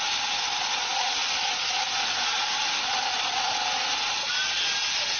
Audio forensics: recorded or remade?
recorded